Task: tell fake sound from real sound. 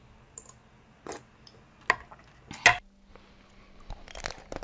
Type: real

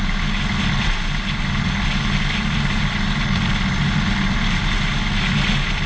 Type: real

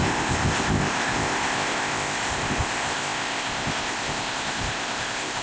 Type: fake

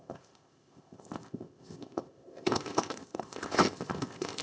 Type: fake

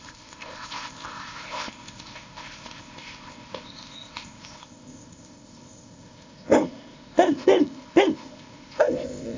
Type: fake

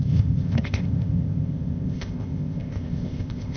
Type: fake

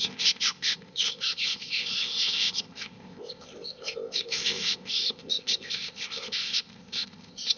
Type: fake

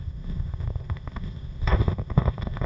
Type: fake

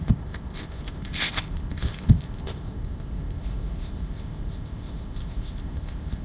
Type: fake